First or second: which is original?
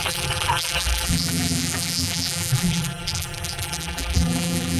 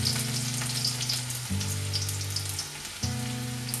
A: second